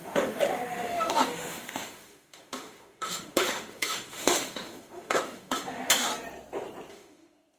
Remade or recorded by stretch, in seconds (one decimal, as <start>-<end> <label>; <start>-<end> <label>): 0.0-6.1 remade; 6.1-6.9 recorded; 6.9-7.6 remade